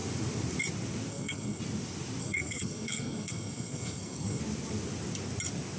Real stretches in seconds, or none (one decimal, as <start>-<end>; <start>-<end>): 0.0-1.1; 1.6-2.2; 4.4-5.8